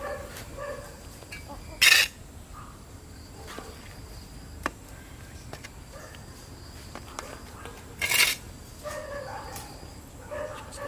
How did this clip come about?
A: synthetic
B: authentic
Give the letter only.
B